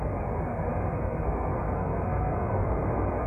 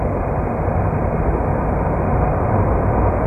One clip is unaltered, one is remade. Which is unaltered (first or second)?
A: second